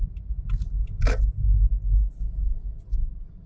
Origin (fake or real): real